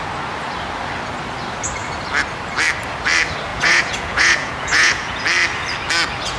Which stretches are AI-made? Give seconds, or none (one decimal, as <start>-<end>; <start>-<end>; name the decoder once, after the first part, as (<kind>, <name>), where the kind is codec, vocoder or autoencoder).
3.5-5.2 (vocoder, Vocos)